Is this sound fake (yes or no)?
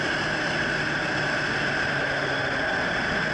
no